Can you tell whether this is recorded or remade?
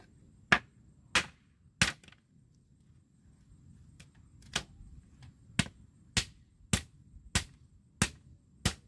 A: recorded